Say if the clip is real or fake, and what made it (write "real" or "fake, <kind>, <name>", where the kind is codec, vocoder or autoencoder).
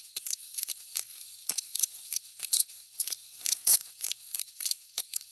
fake, codec, SNAC